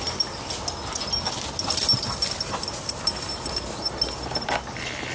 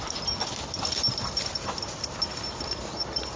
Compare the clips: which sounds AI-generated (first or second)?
second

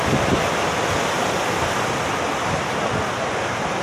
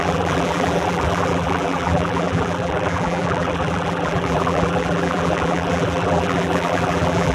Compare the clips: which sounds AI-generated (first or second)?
second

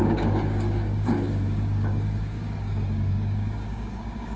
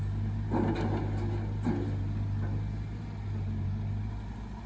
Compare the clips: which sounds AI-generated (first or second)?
first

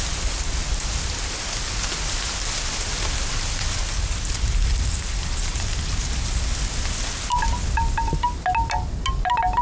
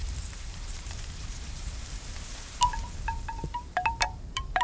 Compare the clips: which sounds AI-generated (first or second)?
second